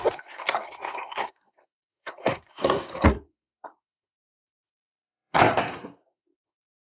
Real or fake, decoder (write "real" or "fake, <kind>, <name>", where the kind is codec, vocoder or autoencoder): fake, codec, SNAC